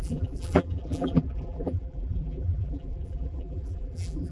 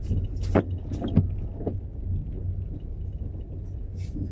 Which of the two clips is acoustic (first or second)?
second